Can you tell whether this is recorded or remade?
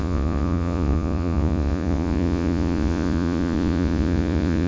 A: remade